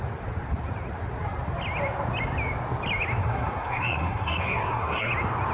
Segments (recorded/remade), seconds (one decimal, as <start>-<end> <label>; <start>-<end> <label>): 0.0-3.2 recorded; 3.2-5.1 remade; 5.1-5.5 recorded